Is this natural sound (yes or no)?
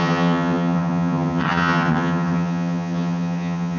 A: no